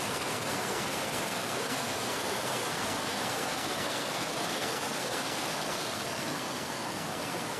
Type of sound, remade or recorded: remade